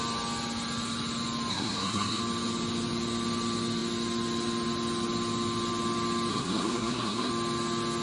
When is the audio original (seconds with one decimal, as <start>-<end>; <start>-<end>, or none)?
0.0-1.5; 2.2-6.3; 7.3-8.0